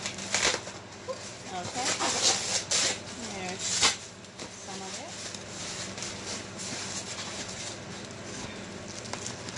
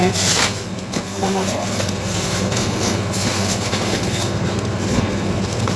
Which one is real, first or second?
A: first